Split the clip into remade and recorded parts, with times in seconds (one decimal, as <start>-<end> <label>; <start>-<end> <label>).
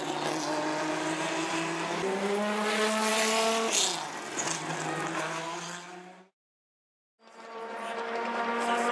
0.0-8.9 recorded